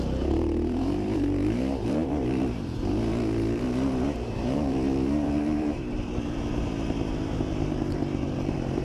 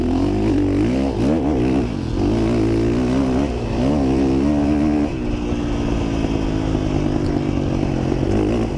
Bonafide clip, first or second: second